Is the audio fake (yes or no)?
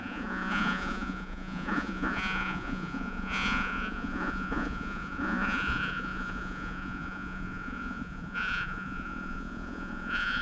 yes